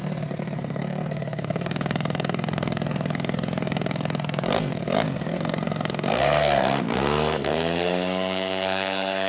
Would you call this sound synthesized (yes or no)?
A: yes